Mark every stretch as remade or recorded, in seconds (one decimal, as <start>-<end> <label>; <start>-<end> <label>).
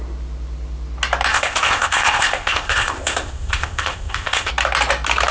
0.0-1.3 recorded; 1.3-4.5 remade; 4.5-5.3 recorded